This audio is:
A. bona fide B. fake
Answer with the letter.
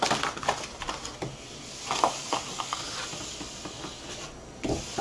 A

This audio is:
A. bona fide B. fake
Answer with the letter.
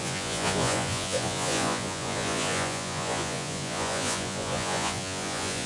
B